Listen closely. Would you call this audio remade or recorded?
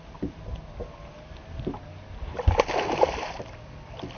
recorded